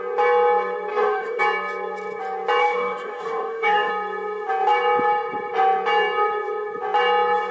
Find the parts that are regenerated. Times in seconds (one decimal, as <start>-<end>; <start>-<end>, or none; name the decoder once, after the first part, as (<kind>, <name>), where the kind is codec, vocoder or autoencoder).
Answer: 0.9-1.4 (codec, DAC); 2.6-3.9